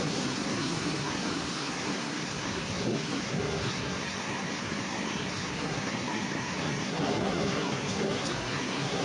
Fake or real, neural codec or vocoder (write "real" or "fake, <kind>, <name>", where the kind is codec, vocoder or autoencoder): fake, codec, SNAC